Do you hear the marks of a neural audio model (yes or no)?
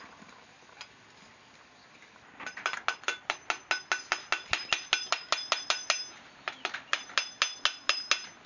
no